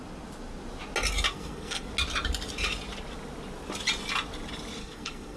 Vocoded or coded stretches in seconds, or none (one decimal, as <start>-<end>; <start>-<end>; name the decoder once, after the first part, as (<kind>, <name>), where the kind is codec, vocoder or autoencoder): 1.3-1.9 (codec, SNAC); 4.8-5.4